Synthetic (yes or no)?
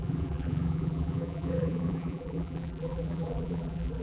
yes